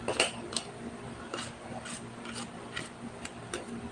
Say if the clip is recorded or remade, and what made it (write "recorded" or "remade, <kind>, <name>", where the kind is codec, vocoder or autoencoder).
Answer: recorded